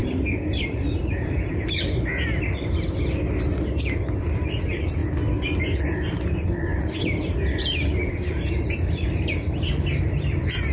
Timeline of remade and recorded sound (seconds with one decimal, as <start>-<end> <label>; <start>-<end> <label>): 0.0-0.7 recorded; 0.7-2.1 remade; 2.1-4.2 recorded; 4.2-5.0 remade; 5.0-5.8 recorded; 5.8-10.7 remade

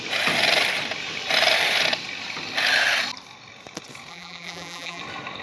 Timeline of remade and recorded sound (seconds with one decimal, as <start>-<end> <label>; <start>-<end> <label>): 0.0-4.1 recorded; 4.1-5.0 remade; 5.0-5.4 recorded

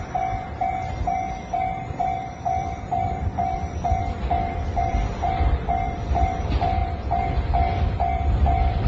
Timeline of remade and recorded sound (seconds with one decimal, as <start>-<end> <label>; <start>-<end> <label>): 0.0-8.9 remade

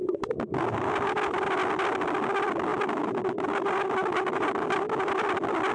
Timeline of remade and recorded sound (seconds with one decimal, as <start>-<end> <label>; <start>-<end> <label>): 0.0-2.7 recorded; 2.7-4.9 remade; 4.9-5.7 recorded

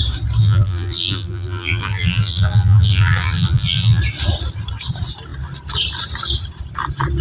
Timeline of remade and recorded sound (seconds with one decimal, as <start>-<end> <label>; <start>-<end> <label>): 0.0-0.4 recorded; 0.4-4.0 remade; 4.0-7.2 recorded